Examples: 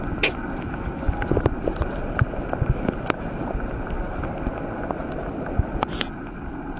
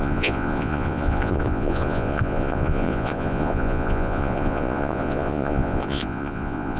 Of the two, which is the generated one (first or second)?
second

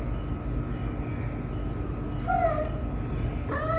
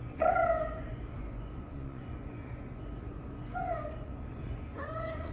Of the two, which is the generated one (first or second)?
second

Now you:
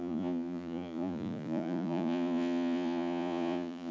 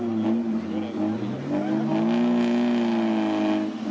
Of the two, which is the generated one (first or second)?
first